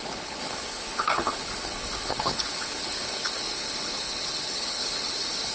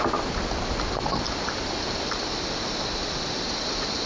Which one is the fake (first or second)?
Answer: first